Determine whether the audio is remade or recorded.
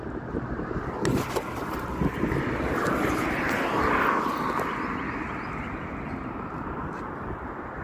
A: recorded